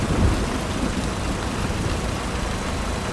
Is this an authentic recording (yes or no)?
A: yes